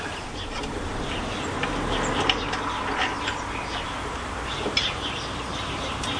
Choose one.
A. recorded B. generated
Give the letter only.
A